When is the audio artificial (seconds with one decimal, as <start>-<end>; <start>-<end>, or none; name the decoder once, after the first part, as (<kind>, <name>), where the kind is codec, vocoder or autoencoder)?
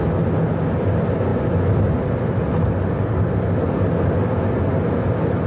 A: none